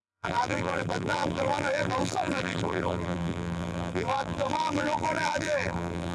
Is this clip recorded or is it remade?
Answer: remade